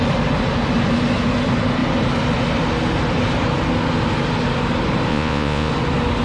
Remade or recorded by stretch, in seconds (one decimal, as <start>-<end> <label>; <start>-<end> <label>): 0.0-5.1 recorded; 5.1-5.7 remade; 5.7-6.2 recorded